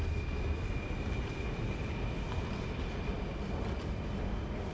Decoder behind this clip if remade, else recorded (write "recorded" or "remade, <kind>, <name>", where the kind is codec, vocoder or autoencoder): recorded